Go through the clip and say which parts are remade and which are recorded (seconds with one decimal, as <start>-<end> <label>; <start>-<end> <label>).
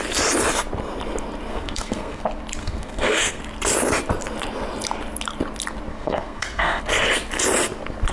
0.0-1.5 recorded; 1.5-2.2 remade; 2.2-2.6 recorded; 2.6-3.4 remade; 3.4-5.9 recorded; 5.9-6.8 remade; 6.8-8.1 recorded